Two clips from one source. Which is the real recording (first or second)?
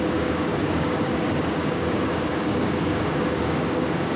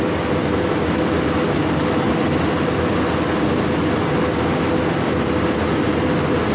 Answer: second